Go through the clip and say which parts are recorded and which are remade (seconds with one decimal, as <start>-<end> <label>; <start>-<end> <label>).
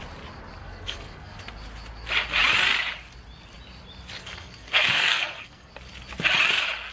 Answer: 0.0-0.6 recorded; 0.6-1.4 remade; 1.4-4.2 recorded; 4.2-5.7 remade; 5.7-6.9 recorded